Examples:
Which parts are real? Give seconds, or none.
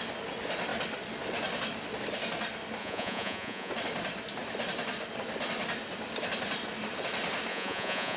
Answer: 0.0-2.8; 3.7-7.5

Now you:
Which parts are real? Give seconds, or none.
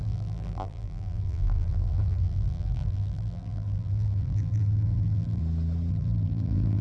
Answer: 5.4-5.9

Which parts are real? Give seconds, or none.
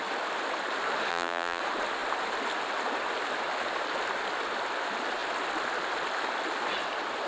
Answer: 0.0-1.1; 1.6-7.3